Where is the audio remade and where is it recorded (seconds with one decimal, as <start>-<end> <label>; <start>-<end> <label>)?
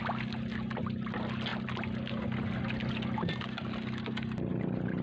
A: 0.0-5.0 recorded